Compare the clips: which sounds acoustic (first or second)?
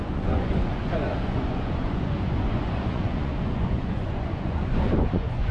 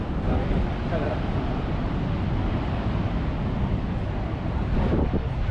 second